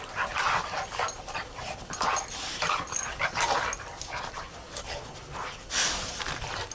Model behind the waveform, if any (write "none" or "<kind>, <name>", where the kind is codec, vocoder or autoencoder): none